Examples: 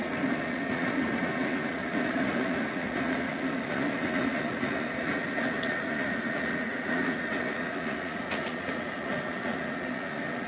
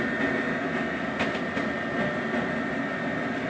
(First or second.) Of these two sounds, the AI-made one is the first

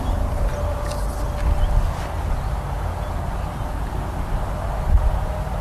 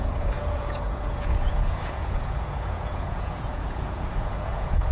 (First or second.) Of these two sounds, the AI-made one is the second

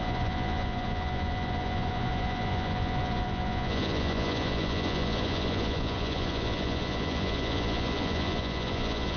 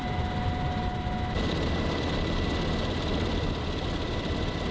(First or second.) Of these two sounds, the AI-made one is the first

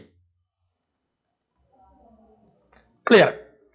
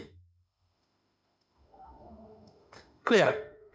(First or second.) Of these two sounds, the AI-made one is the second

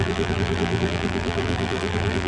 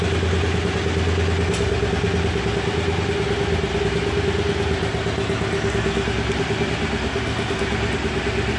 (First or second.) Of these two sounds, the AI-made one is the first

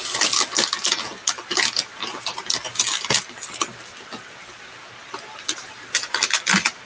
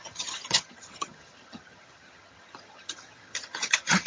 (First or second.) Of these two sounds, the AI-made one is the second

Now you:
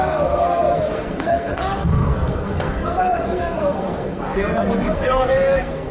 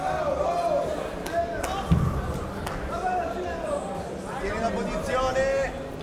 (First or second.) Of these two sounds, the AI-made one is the first